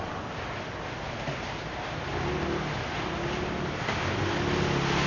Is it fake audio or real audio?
real